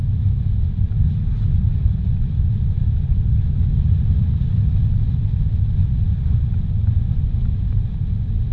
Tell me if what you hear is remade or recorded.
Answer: recorded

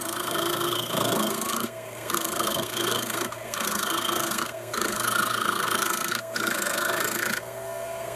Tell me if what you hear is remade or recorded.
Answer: remade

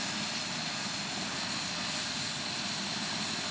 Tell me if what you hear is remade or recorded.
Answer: recorded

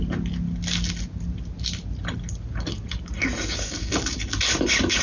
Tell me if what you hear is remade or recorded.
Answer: recorded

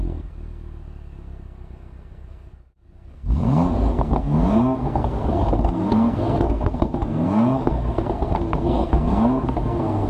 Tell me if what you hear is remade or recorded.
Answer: remade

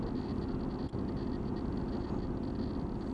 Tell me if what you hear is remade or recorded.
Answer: recorded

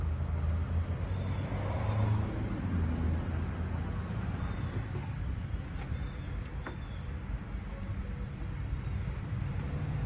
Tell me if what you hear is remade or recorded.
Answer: recorded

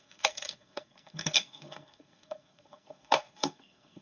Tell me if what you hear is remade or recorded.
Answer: remade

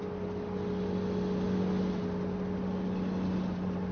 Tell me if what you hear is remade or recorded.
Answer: recorded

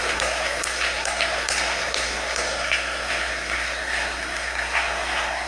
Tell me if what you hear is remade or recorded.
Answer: remade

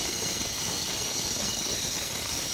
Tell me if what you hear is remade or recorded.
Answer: remade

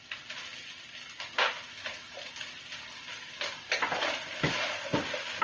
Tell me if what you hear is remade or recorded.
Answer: recorded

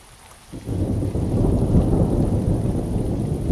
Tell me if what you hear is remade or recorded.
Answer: recorded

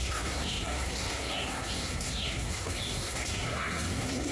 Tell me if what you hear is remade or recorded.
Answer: remade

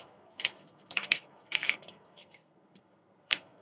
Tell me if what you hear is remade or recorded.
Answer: remade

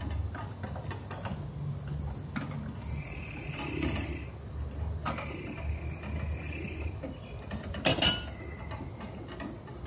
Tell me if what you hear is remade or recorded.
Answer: recorded